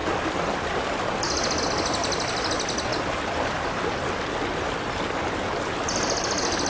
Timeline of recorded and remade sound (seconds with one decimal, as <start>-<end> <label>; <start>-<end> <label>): 0.0-1.6 remade; 1.6-2.0 recorded; 2.0-2.5 remade; 2.5-6.7 recorded